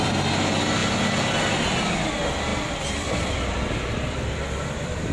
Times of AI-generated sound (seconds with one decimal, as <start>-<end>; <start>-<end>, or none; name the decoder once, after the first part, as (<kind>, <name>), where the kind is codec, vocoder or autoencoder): 0.8-2.1 (vocoder, BigVGAN v2); 2.5-4.6